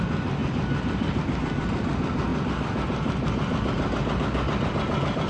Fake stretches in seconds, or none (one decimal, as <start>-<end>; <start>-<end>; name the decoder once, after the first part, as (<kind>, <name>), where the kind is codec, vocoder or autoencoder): none